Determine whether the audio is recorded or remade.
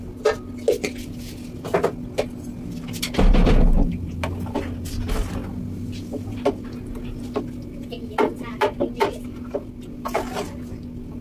recorded